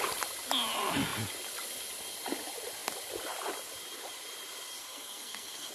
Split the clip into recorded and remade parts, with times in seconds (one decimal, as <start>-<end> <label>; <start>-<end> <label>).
0.0-4.8 recorded; 4.8-5.7 remade